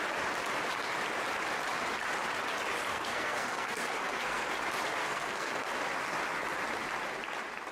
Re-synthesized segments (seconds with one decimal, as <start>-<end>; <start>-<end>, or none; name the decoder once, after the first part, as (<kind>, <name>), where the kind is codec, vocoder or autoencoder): 2.9-4.5 (codec, SNAC); 5.0-5.7